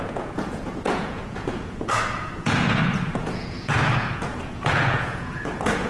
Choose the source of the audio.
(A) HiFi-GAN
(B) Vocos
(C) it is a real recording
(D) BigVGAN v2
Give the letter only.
B